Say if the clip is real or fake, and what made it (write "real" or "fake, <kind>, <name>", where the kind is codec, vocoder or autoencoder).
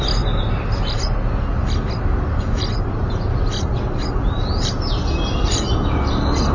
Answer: real